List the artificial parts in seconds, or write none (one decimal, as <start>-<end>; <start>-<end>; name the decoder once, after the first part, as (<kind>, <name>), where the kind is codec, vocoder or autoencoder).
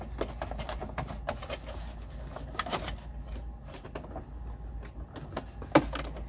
none